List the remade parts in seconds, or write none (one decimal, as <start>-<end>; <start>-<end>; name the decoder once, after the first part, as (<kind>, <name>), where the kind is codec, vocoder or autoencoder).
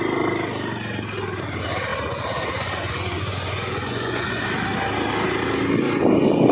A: 1.9-4.4 (vocoder, Vocos)